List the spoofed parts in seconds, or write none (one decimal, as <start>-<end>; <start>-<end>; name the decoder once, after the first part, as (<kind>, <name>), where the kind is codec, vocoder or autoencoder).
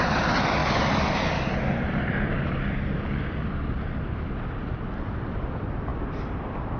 0.0-0.6 (vocoder, BigVGAN v2); 1.8-5.9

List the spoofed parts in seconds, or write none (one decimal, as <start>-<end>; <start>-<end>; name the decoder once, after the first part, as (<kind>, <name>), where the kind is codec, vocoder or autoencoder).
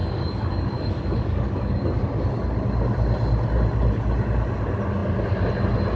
0.0-2.0 (codec, DAC)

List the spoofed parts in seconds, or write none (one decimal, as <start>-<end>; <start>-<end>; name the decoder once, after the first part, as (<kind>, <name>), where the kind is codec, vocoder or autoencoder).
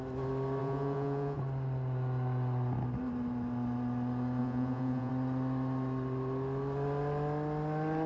0.6-1.4 (vocoder, Vocos); 4.4-5.1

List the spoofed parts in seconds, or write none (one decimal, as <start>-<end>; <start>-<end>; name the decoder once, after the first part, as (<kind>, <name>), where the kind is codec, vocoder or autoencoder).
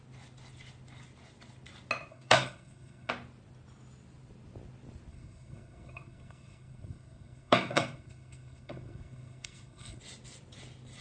2.1-3.1 (codec, SNAC); 5.1-10.0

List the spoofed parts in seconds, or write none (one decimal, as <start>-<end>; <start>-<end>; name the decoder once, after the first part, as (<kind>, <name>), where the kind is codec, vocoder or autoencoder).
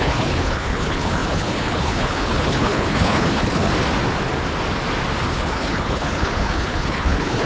0.0-3.7 (codec, HILCodec); 5.3-7.5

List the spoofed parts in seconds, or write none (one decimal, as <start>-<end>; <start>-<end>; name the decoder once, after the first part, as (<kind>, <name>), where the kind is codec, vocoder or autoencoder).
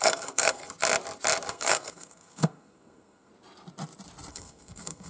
0.0-0.6 (codec, SNAC); 1.5-3.3; 4.3-5.1